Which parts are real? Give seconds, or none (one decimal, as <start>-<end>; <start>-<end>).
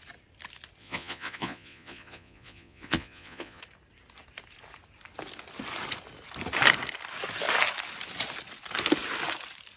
0.0-0.8; 3.6-9.8